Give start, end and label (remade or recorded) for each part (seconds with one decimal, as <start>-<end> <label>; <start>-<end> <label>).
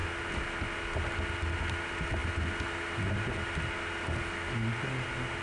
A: 0.0-5.4 recorded